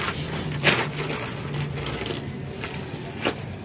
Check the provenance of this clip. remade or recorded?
recorded